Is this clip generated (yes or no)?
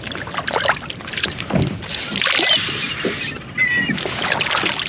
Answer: no